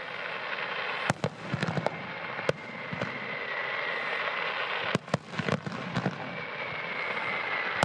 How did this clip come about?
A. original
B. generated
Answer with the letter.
A